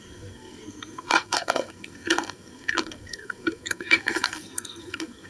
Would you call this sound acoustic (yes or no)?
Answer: no